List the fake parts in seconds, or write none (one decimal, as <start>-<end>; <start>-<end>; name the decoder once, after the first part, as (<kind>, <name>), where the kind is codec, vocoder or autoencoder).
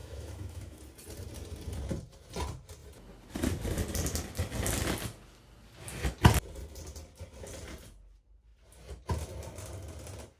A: 0.0-0.8 (autoencoder, DAC-VAE)